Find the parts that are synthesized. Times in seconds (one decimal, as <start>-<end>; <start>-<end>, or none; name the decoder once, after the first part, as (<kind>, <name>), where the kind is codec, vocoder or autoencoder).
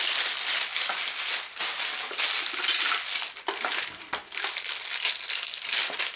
none